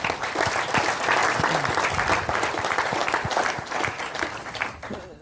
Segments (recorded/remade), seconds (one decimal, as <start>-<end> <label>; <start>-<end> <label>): 0.0-1.2 remade; 1.2-1.9 recorded; 1.9-5.2 remade